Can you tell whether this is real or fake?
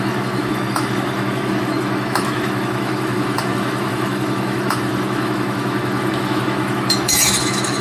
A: fake